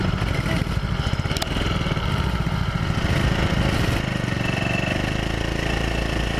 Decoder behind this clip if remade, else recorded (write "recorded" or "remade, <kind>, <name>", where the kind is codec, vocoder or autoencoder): recorded